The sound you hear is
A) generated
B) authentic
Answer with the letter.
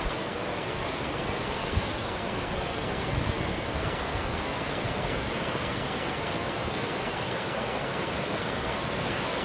A